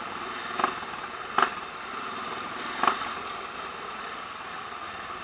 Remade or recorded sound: recorded